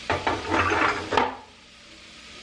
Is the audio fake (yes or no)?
no